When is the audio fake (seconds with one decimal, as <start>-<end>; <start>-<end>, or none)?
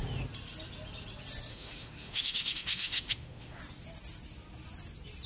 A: 1.5-3.6